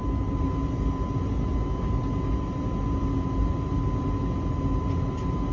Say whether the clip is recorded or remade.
recorded